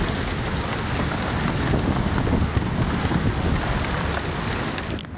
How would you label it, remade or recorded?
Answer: recorded